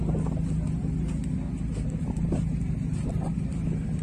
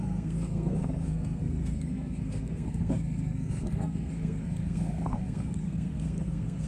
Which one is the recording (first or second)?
first